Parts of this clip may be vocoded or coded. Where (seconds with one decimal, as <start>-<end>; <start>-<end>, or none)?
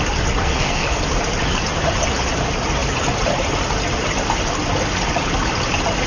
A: 0.4-1.0